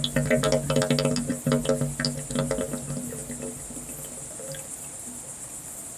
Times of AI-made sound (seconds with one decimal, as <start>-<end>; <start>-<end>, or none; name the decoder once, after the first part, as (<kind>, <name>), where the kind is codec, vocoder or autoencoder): none

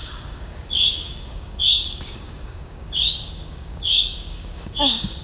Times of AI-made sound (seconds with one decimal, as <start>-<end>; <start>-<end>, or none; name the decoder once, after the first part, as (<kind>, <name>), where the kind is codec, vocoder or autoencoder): 0.0-5.2 (codec, DAC)